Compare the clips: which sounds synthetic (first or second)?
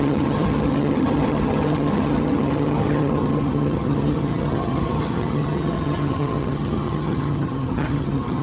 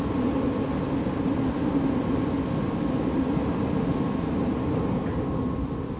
first